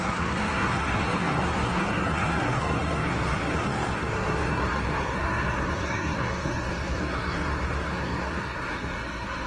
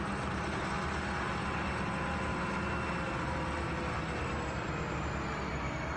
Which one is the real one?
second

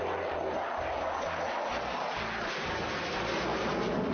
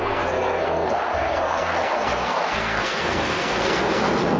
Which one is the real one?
first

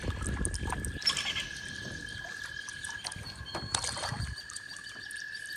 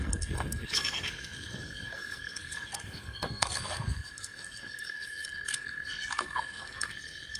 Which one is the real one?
first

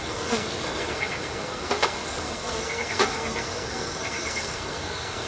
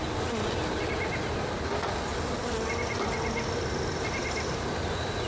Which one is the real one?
second